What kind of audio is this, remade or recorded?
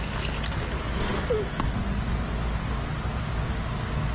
recorded